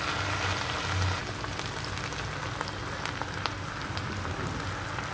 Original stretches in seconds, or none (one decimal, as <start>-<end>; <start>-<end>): 0.0-5.1